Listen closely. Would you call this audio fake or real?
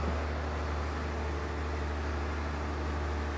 real